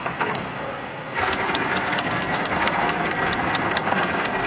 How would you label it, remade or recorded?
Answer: remade